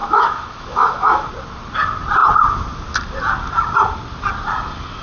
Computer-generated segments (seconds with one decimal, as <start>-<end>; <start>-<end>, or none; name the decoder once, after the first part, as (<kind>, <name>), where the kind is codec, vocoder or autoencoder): 0.0-1.3 (autoencoder, DAC-VAE)